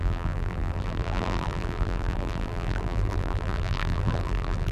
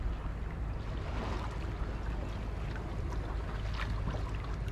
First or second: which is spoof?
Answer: first